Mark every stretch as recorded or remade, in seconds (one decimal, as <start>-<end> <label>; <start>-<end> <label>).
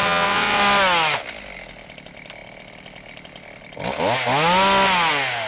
0.0-0.6 remade; 0.6-5.5 recorded